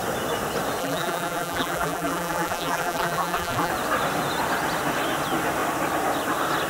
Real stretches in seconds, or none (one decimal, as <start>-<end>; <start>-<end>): 0.0-0.8; 3.7-6.7